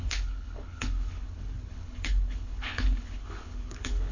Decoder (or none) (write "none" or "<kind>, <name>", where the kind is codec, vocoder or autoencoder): codec, HILCodec